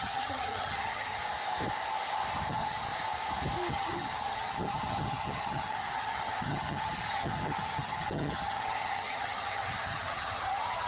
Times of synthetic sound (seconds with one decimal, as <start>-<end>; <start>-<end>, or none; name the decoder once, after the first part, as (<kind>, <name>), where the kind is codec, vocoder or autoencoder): 0.0-1.2 (vocoder, HiFi-GAN); 2.5-2.9; 3.7-10.9